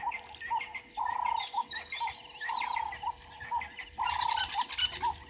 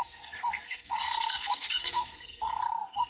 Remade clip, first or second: second